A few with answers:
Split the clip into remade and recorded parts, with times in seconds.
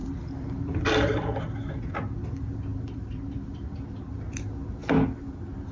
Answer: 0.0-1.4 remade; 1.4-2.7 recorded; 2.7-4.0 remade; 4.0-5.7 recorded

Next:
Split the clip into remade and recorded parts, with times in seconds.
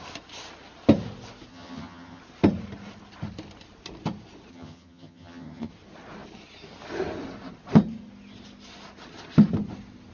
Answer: 0.0-1.5 recorded; 1.5-2.2 remade; 2.2-4.5 recorded; 4.5-5.7 remade; 5.7-10.1 recorded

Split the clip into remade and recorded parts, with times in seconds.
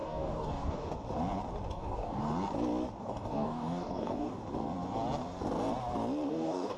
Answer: 0.0-0.9 remade; 0.9-1.7 recorded; 1.7-2.2 remade; 2.2-3.0 recorded; 3.0-4.4 remade; 4.4-6.3 recorded; 6.3-6.8 remade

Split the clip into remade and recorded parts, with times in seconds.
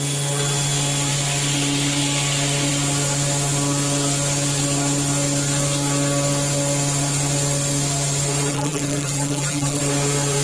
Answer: 0.0-8.5 recorded; 8.5-9.8 remade; 9.8-10.4 recorded